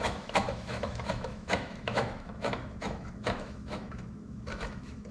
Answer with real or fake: fake